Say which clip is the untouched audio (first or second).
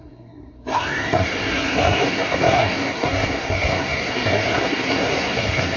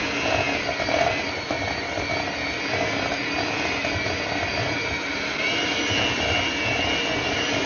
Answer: second